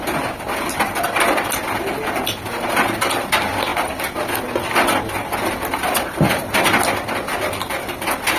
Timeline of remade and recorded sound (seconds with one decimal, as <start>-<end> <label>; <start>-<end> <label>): 0.0-8.4 recorded